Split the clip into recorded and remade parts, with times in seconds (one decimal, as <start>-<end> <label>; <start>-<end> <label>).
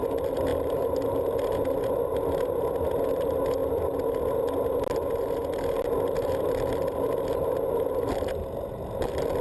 0.0-9.4 recorded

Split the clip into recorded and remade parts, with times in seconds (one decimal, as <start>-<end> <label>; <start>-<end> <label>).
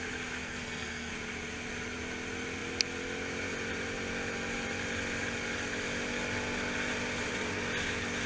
0.0-0.4 recorded; 0.4-1.1 remade; 1.1-8.3 recorded